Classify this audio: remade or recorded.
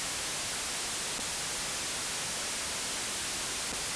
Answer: recorded